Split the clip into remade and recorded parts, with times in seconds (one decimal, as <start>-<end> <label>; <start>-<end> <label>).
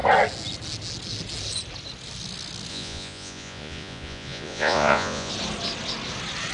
0.0-2.7 recorded; 2.7-5.3 remade; 5.3-6.5 recorded